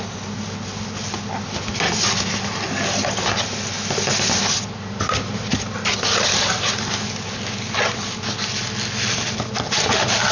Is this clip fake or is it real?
real